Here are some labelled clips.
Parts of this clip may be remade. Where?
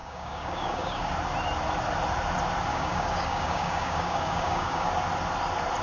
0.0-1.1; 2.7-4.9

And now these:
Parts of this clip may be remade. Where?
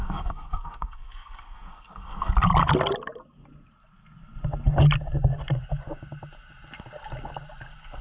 0.0-2.3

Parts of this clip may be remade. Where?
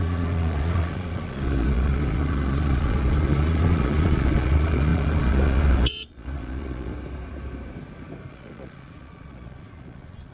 0.0-6.9; 8.3-10.3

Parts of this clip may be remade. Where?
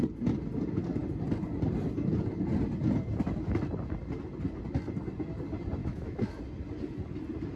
5.8-6.4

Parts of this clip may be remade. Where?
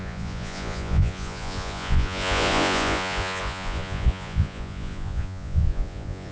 0.0-6.3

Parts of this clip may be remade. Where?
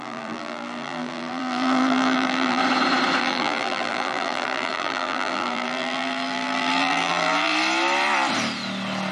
0.0-2.6; 3.2-7.5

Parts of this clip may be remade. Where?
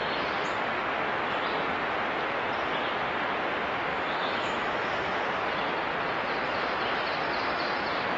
3.9-5.2